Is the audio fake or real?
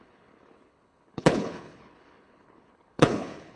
fake